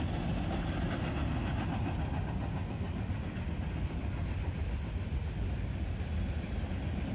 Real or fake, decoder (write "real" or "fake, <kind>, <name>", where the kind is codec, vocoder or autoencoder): real